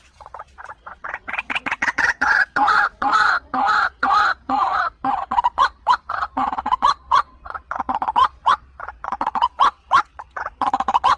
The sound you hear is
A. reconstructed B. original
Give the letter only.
A